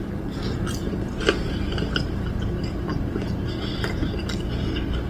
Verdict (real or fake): real